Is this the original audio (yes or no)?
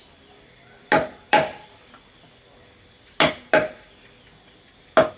yes